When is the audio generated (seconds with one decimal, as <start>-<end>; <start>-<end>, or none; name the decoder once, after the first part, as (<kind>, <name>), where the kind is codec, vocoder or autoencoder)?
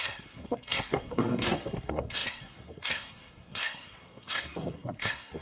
0.0-5.4 (codec, SNAC)